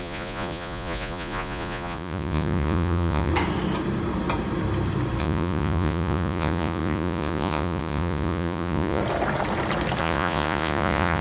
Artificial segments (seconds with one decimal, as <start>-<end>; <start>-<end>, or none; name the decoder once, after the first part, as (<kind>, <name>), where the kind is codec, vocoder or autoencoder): 0.0-3.3 (vocoder, Vocos); 5.2-9.0; 10.0-11.2